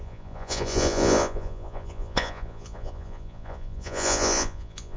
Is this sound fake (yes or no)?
yes